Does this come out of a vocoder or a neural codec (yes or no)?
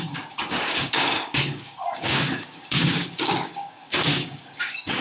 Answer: yes